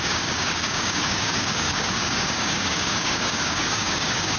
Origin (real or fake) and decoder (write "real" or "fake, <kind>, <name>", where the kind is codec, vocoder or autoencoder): fake, codec, DAC